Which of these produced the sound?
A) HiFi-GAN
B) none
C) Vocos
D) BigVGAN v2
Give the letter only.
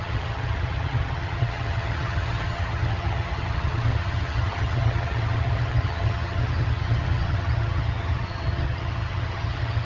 A